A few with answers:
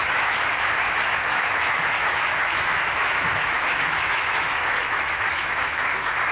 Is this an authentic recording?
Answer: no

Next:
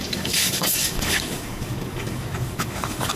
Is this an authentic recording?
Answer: no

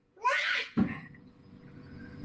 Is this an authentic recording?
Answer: no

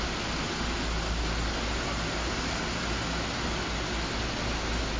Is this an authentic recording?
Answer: yes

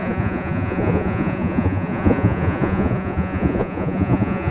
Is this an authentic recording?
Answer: no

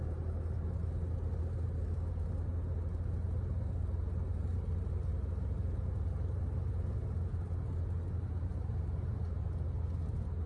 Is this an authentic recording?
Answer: yes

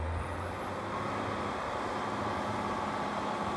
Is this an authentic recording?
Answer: yes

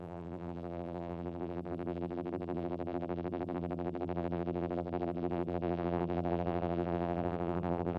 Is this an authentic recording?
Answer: no